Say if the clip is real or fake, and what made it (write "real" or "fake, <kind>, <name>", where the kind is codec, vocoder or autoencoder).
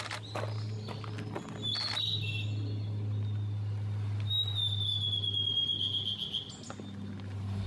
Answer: real